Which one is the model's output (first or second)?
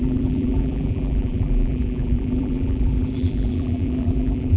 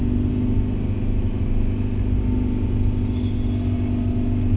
first